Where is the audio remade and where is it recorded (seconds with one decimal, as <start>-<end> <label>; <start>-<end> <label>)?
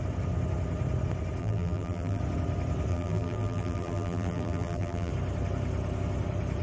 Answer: 0.0-1.4 recorded; 1.4-2.2 remade; 2.2-2.9 recorded; 2.9-5.1 remade; 5.1-6.6 recorded